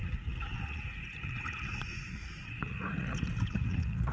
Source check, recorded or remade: remade